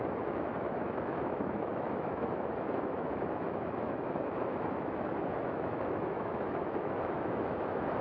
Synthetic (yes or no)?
yes